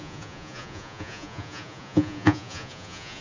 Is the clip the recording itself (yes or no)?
no